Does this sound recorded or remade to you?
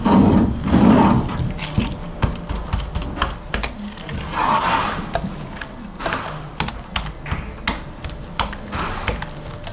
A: recorded